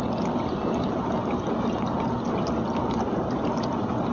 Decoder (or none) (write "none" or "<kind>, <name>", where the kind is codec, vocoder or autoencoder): none